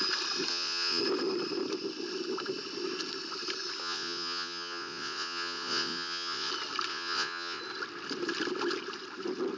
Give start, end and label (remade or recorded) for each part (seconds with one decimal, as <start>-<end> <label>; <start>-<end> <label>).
0.0-0.5 recorded; 0.5-1.0 remade; 1.0-3.8 recorded; 3.8-6.5 remade; 6.5-6.9 recorded; 6.9-7.6 remade; 7.6-9.6 recorded